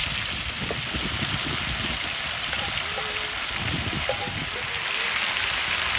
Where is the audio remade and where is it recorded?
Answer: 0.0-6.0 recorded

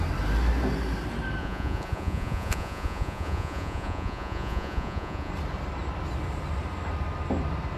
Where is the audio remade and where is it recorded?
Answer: 0.0-1.4 recorded; 1.4-5.3 remade; 5.3-7.8 recorded

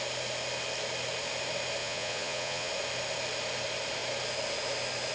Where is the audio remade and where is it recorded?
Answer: 0.0-1.8 recorded; 1.8-2.7 remade; 2.7-5.1 recorded

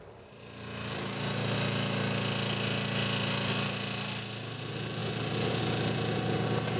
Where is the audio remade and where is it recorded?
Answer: 0.0-6.8 recorded

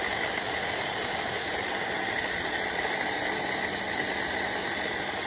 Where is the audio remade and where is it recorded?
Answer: 0.0-2.2 recorded; 2.2-2.8 remade; 2.8-5.3 recorded

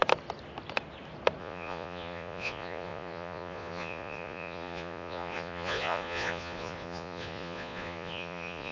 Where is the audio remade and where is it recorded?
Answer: 0.0-1.4 recorded; 1.4-8.7 remade

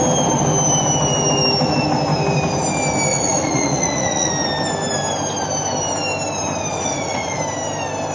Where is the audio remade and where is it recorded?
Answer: 0.0-3.1 recorded; 3.1-4.3 remade; 4.3-6.7 recorded; 6.7-7.4 remade; 7.4-8.1 recorded